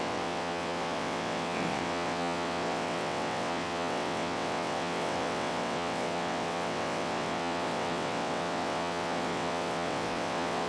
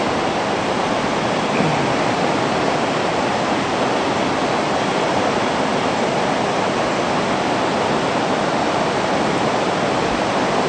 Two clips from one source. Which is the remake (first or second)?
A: first